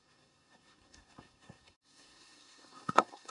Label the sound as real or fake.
fake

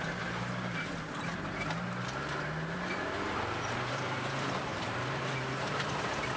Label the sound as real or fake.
fake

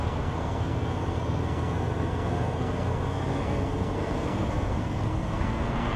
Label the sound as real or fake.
fake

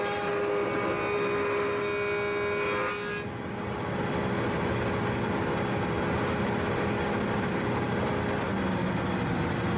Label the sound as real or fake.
real